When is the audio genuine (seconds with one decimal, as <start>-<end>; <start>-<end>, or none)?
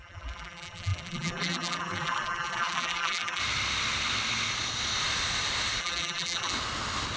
3.4-5.8; 6.5-7.2